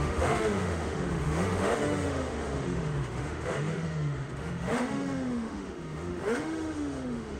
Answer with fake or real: fake